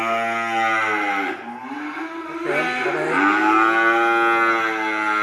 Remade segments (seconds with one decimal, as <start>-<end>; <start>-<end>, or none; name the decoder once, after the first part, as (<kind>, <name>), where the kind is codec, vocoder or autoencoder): none